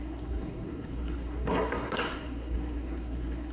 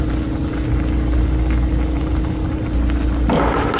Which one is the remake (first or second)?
first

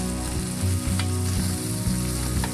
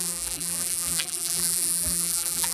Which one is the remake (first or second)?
second